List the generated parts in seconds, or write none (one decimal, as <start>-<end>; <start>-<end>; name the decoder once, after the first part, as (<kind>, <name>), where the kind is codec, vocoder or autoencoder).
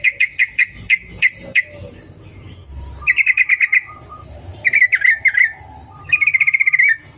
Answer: none